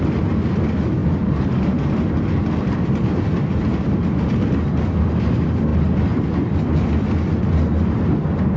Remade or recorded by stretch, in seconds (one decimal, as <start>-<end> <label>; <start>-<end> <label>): 0.0-1.0 recorded; 1.0-4.5 remade; 4.5-8.6 recorded